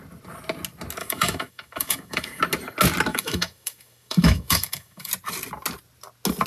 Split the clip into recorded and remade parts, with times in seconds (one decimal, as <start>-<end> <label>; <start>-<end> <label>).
0.0-1.0 recorded; 1.0-2.4 remade; 2.4-3.1 recorded; 3.1-5.1 remade; 5.1-6.5 recorded